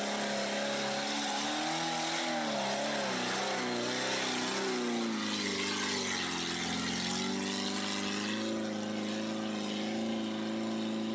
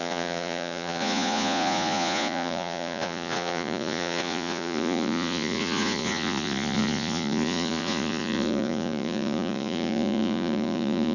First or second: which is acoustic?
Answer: first